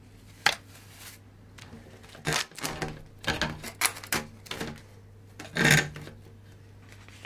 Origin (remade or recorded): recorded